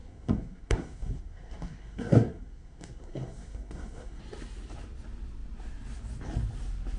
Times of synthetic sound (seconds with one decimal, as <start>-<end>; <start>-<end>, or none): 0.0-4.2